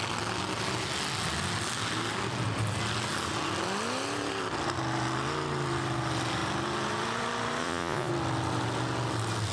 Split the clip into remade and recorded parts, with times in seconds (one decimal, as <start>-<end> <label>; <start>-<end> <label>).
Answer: 0.0-7.6 recorded; 7.6-8.1 remade; 8.1-9.5 recorded